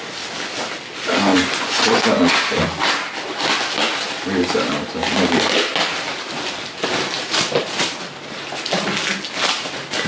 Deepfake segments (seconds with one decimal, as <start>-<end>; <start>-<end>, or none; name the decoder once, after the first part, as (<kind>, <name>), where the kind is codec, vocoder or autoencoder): 1.3-2.3 (vocoder, Vocos)